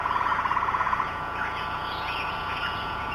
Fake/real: fake